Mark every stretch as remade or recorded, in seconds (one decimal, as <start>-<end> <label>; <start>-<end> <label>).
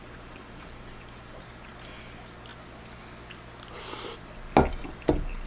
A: 0.0-1.7 remade; 1.7-5.5 recorded